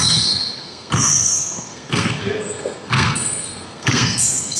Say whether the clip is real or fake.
fake